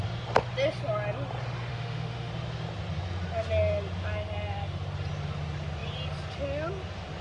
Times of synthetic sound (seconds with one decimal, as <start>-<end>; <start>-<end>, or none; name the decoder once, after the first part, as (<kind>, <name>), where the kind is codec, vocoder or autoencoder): 1.7-2.3 (autoencoder, DAC-VAE)